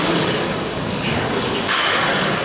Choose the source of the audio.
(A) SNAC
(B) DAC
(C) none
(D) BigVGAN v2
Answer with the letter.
B